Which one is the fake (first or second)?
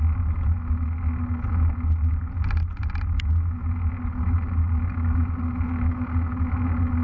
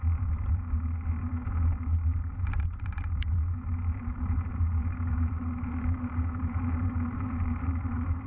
second